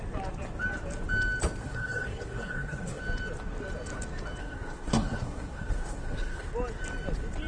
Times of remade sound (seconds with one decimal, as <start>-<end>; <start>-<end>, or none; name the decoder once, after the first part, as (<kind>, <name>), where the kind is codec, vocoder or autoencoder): 1.6-3.0 (codec, SNAC); 4.4-6.5